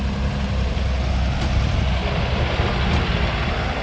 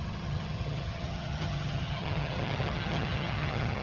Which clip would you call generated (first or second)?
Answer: second